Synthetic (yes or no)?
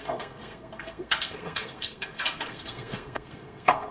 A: yes